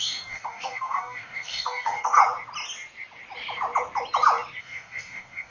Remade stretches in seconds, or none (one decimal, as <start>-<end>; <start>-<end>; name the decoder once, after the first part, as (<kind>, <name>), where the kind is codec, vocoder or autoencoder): 0.0-2.2 (codec, DAC); 4.6-5.5